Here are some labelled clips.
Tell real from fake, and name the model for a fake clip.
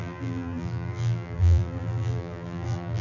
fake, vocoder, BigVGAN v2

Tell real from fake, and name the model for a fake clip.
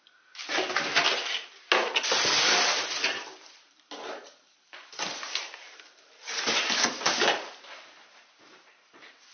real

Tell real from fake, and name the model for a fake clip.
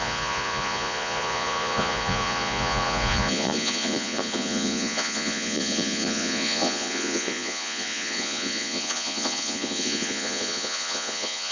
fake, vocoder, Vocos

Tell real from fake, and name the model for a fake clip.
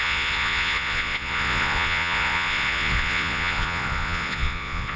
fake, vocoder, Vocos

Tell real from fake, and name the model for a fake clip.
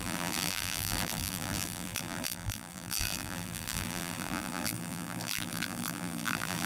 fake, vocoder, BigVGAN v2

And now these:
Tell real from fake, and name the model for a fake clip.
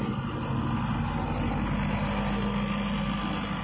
real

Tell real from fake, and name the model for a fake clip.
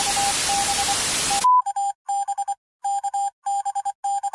real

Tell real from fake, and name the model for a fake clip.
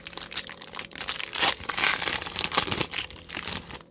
fake, vocoder, BigVGAN v2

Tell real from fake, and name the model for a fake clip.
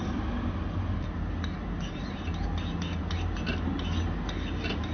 real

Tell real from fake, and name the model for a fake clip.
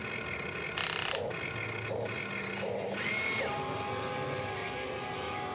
real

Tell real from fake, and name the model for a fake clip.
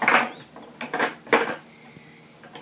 real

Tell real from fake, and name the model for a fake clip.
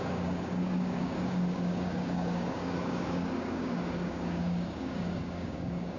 fake, codec, DAC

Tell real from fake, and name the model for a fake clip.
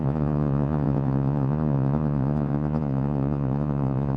fake, vocoder, Vocos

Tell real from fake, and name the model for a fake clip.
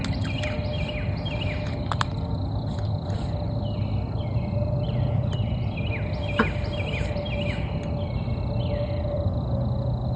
real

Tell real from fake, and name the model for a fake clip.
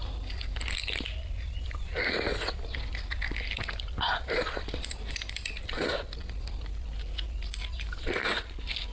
real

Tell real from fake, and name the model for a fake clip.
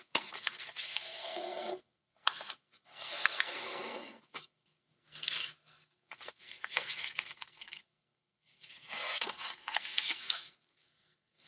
fake, codec, SNAC